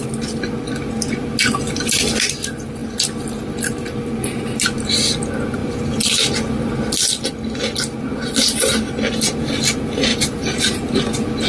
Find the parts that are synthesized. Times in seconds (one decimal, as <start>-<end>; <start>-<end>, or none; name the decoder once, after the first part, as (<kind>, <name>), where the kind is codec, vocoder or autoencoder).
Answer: 10.1-11.0 (vocoder, BigVGAN v2)